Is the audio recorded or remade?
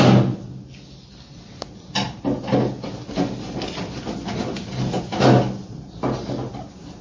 recorded